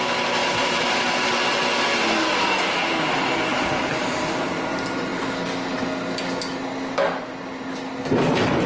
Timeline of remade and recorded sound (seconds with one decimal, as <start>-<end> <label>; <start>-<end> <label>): 0.0-0.4 recorded; 0.4-1.3 remade; 1.3-3.5 recorded; 3.5-4.1 remade; 4.1-8.7 recorded